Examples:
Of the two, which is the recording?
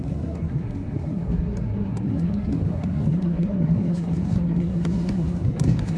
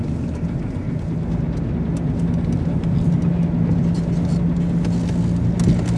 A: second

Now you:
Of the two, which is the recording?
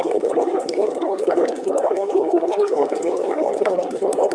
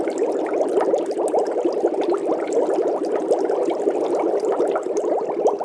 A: second